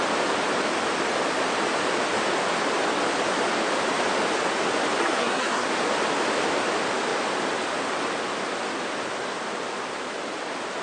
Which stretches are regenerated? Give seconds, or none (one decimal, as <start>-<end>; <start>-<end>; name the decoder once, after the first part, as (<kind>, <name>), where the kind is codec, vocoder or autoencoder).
5.0-5.7 (codec, SNAC)